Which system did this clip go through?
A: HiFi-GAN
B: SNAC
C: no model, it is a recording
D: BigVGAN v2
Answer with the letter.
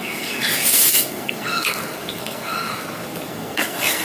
B